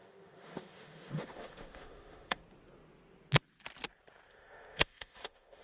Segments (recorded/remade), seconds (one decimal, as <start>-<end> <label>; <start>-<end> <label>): 0.0-2.4 remade; 2.4-4.3 recorded; 4.3-5.6 remade

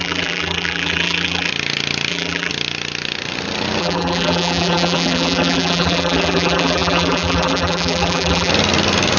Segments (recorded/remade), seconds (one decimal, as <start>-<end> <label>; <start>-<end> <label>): 0.0-1.5 remade; 1.5-2.1 recorded; 2.1-2.5 remade; 2.5-3.8 recorded; 3.8-8.5 remade; 8.5-9.2 recorded